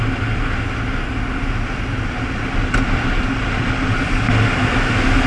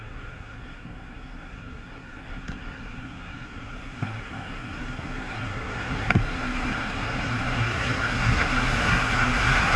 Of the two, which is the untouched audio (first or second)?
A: first